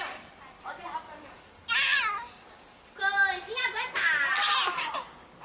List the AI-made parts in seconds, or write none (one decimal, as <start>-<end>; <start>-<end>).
none